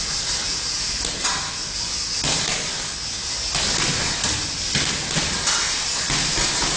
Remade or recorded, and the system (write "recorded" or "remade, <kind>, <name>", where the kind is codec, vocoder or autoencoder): recorded